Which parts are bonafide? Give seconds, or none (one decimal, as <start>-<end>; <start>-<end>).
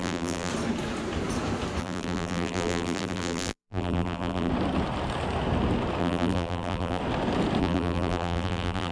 0.5-1.8; 4.5-6.0; 7.0-7.6